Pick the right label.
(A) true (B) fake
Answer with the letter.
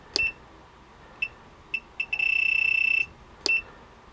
A